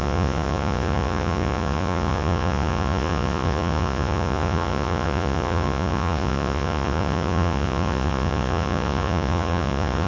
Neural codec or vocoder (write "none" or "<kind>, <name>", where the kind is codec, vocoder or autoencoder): vocoder, Vocos